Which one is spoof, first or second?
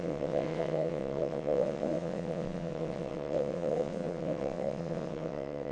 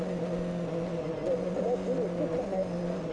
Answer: first